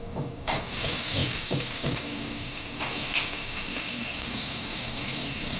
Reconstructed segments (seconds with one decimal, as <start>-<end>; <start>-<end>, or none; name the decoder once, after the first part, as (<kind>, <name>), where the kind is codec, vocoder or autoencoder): 0.0-5.6 (codec, DAC)